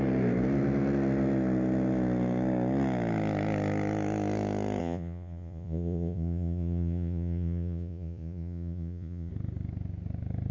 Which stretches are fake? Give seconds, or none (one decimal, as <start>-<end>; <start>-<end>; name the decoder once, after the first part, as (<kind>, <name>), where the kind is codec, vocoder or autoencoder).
4.8-9.3 (vocoder, Vocos)